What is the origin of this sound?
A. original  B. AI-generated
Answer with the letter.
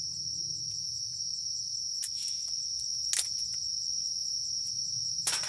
A